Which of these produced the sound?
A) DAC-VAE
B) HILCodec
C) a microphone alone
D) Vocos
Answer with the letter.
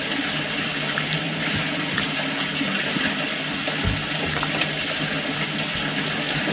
C